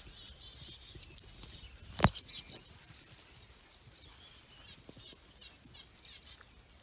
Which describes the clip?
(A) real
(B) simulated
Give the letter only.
A